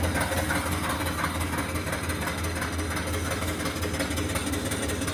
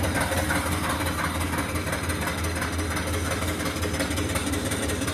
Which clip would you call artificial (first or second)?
second